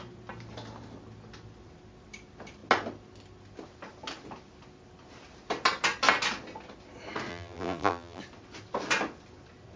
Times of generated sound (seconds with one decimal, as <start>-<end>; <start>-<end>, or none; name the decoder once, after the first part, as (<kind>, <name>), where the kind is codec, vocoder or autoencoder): 7.3-8.2 (vocoder, BigVGAN v2)